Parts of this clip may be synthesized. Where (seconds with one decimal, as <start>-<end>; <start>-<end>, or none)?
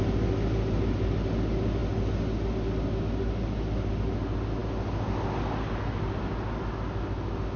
none